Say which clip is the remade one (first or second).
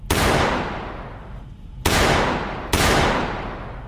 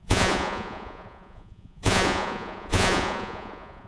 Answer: second